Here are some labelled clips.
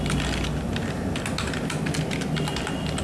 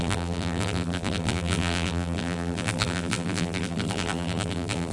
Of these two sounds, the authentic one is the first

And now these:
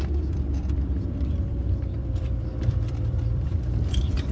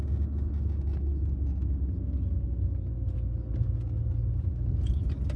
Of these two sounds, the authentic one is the second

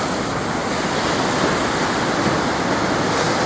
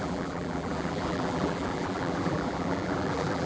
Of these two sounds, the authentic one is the first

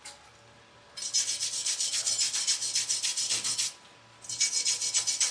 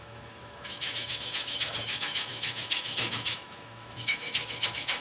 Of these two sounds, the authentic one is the first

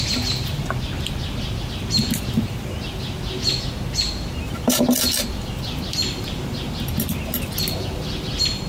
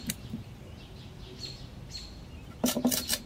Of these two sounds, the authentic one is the first